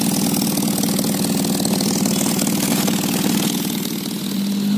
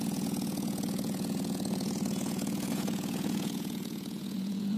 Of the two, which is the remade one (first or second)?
second